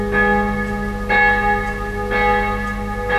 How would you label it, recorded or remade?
recorded